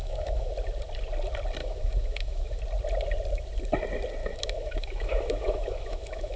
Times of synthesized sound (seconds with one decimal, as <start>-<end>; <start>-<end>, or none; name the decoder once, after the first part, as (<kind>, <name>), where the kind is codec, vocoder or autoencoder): 0.0-0.5 (autoencoder, DAC-VAE); 1.6-2.6; 4.2-6.4

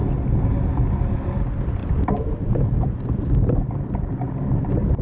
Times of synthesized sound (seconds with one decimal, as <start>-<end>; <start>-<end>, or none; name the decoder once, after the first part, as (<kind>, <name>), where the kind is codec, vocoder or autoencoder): 1.8-5.0 (vocoder, BigVGAN v2)

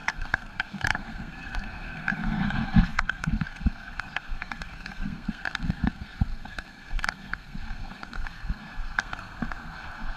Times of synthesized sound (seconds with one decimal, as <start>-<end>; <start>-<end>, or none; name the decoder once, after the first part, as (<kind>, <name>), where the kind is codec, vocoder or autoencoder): 0.0-10.2 (codec, SNAC)

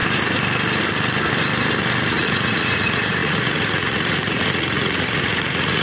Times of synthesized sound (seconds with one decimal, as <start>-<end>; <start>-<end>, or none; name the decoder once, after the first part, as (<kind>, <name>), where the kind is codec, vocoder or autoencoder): 2.1-5.8 (vocoder, Vocos)

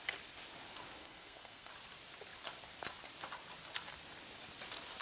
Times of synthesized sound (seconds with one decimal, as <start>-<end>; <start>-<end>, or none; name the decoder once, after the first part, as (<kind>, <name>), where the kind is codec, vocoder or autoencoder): 1.0-1.7 (codec, SNAC)

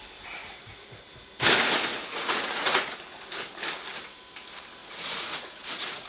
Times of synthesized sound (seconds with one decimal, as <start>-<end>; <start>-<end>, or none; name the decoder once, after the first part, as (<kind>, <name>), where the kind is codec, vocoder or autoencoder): 0.4-1.1 (vocoder, Vocos); 1.9-2.9; 4.8-6.1

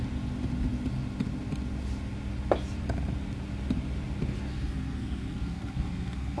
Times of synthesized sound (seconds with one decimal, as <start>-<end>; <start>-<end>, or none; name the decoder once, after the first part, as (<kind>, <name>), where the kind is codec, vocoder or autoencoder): 4.5-6.4 (codec, SNAC)

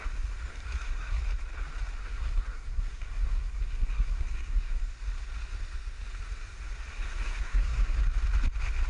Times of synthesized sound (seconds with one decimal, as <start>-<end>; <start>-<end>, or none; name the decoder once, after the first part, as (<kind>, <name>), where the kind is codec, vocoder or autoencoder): 0.5-1.2 (codec, SNAC); 2.0-4.8; 6.9-8.0